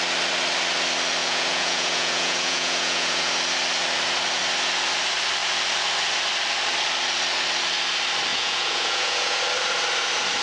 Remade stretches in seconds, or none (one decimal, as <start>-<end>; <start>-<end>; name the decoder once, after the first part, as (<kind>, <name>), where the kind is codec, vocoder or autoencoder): 1.2-3.3 (vocoder, Vocos); 8.3-9.4